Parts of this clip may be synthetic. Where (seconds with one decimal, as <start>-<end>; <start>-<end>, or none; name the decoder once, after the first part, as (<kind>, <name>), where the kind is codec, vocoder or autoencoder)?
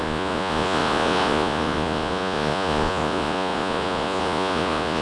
0.0-5.0 (vocoder, Vocos)